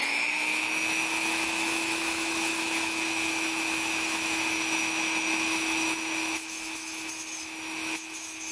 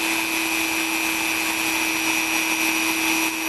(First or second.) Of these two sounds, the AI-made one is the first